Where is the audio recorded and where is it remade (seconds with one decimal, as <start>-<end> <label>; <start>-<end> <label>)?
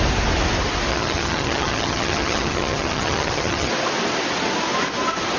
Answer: 0.0-0.9 recorded; 0.9-3.7 remade; 3.7-5.4 recorded